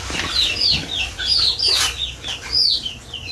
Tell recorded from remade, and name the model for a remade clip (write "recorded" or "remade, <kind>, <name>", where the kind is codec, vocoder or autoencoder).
recorded